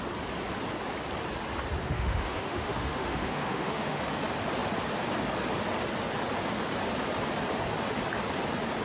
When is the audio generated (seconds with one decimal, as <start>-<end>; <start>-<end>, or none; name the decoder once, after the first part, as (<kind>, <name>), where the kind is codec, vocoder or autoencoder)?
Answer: 1.8-4.0 (autoencoder, DAC-VAE)